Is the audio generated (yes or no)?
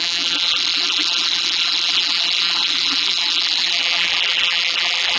yes